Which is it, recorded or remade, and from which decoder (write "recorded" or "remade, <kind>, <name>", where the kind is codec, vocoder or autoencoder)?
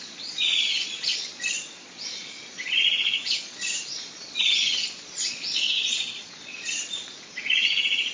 remade, vocoder, Vocos